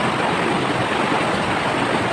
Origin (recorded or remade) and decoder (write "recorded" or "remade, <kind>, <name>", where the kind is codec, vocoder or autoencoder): recorded